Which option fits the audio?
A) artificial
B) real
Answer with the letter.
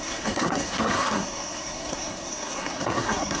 A